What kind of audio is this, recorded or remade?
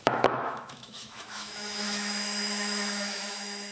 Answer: remade